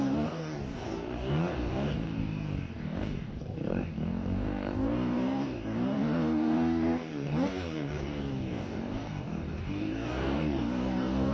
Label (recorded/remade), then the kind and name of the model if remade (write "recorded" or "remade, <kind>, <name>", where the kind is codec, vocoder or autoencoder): remade, codec, DAC